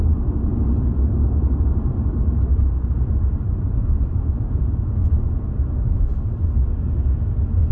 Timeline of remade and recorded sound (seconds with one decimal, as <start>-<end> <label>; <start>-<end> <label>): 0.0-0.5 recorded; 0.5-2.7 remade; 2.7-4.1 recorded; 4.1-4.7 remade; 4.7-7.7 recorded